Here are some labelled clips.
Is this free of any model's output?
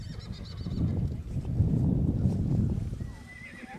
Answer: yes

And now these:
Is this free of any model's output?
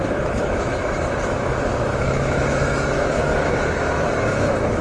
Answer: no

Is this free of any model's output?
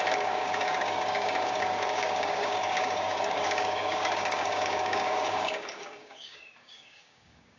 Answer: no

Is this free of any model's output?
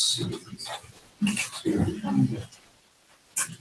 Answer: yes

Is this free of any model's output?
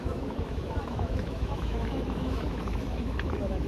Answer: no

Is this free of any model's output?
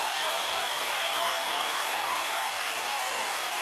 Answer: no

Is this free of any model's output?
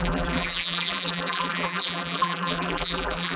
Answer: no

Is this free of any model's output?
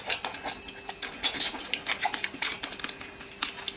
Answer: yes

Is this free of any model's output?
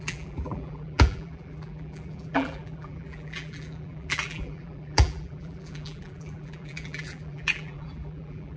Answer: no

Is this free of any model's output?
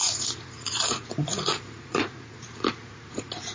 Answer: no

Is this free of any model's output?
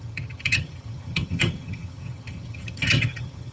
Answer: no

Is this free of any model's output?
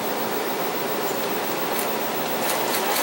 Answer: yes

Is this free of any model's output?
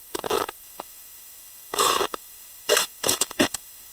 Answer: no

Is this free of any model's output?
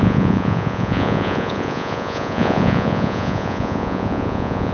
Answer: no